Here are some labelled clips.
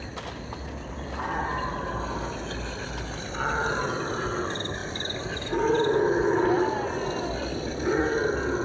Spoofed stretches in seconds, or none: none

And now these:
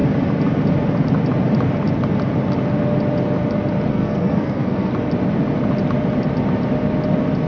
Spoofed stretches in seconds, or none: 3.9-4.9 (codec, SNAC)

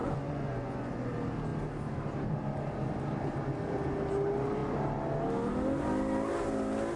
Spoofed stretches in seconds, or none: 0.0-1.1 (vocoder, Vocos)

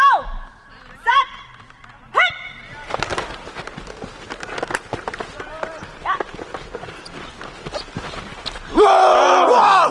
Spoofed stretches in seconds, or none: 1.1-1.9 (vocoder, BigVGAN v2); 5.7-9.5

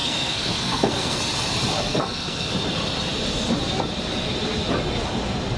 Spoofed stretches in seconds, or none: 0.0-1.2 (codec, SNAC); 1.9-2.5

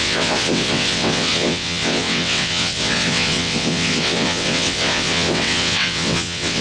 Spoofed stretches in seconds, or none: 0.0-6.6 (vocoder, WaveNeXt)

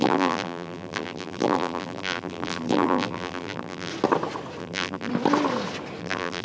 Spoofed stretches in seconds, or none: 0.0-3.9 (vocoder, BigVGAN v2); 4.6-5.1; 6.0-6.4